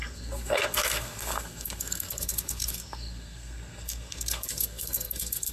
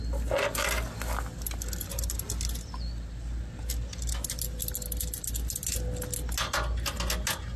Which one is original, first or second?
second